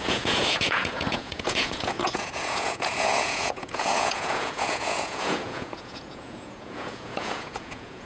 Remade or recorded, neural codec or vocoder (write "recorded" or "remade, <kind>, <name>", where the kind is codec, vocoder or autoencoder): remade, vocoder, Vocos